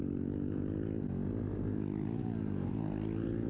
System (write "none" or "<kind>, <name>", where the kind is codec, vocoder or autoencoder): none